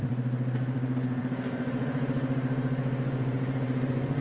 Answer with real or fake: fake